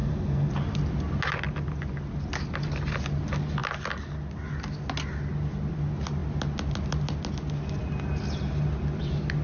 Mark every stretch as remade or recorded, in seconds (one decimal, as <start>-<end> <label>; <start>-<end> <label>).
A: 0.0-0.5 remade; 0.5-9.4 recorded